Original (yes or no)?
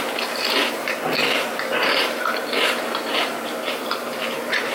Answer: no